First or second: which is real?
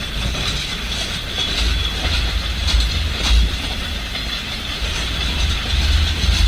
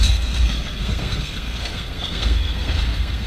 first